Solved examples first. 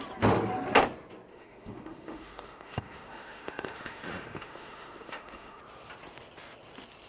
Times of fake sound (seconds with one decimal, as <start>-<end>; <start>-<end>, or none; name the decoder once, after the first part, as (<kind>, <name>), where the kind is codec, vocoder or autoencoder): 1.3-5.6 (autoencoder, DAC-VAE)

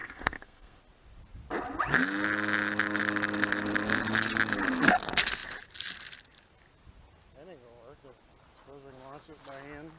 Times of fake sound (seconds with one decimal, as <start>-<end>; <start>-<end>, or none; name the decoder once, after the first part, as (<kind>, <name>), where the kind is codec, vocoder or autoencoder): 0.0-0.8 (codec, SNAC)

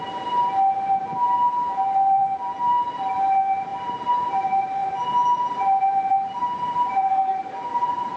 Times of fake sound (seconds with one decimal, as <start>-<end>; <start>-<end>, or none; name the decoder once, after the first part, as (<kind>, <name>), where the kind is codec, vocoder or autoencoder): none

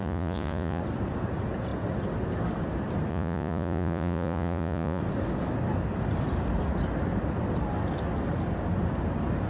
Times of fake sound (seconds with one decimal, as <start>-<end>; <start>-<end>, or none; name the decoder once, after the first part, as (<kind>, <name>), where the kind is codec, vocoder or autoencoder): 0.0-0.8 (vocoder, Vocos); 3.1-5.0